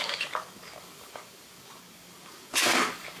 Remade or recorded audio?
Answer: remade